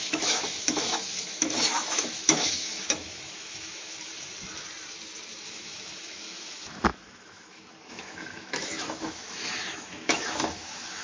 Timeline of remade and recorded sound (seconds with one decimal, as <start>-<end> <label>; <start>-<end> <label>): 0.0-4.1 remade; 4.1-5.4 recorded; 5.4-11.0 remade